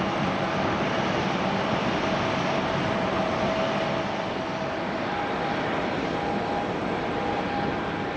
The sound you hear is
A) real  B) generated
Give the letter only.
B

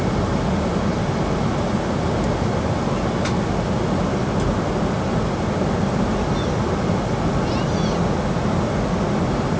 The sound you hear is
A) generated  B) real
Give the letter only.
B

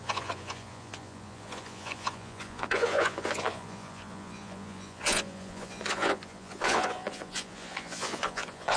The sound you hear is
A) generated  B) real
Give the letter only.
A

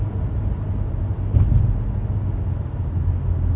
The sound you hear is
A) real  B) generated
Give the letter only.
A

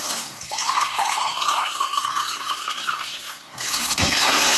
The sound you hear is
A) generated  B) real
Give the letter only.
A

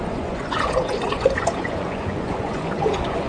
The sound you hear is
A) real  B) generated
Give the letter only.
B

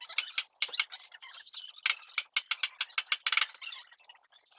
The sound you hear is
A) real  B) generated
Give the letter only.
A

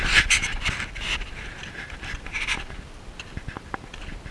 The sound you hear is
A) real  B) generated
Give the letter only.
A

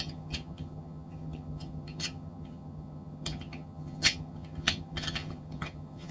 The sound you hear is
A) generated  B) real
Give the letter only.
A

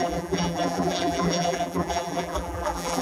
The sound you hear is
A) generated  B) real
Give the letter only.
A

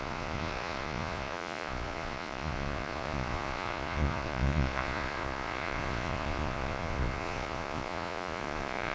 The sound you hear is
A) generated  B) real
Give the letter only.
A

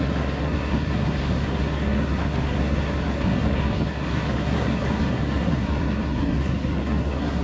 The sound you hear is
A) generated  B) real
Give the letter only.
A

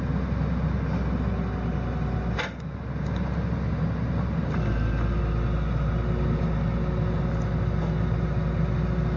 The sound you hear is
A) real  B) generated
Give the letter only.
A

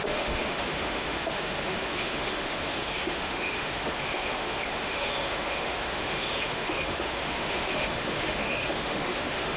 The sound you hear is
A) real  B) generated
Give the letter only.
B